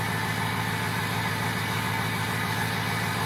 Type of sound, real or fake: real